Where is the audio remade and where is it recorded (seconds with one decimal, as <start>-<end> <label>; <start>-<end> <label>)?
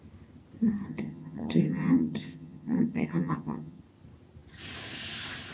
0.0-0.9 recorded; 0.9-3.8 remade; 3.8-5.5 recorded